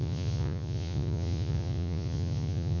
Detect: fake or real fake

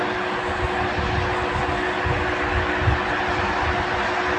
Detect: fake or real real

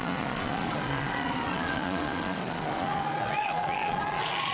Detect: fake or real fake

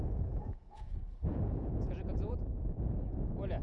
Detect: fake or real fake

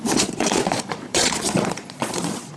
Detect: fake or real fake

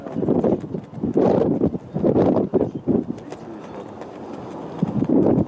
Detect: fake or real real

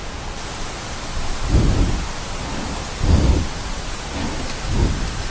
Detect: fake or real real